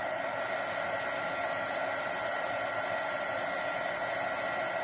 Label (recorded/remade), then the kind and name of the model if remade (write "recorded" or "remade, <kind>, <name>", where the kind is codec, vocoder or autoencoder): recorded